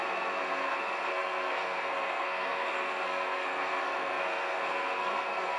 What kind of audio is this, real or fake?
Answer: fake